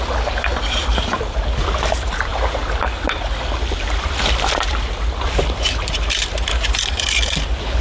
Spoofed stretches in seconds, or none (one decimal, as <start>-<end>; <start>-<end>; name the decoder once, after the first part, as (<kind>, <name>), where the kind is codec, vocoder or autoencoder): 0.8-1.4 (vocoder, BigVGAN v2); 2.3-6.3